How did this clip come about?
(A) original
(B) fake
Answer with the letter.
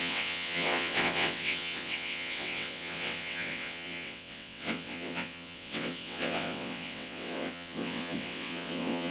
B